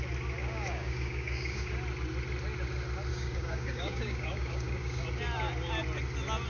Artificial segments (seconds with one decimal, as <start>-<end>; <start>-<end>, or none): 0.4-1.7; 3.1-5.0